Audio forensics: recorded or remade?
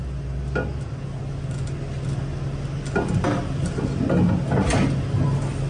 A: recorded